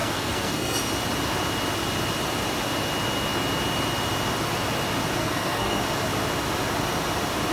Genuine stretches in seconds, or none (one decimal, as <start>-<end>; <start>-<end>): 0.8-5.2; 5.8-7.5